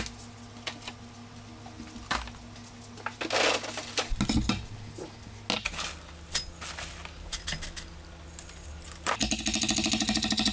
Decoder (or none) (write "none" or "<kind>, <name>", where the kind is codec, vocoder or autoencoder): none